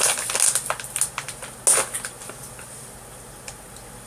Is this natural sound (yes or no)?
yes